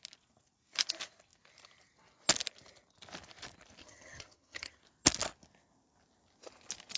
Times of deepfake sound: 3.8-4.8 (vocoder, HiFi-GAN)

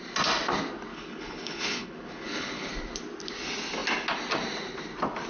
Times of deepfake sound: 0.9-2.7 (codec, HILCodec)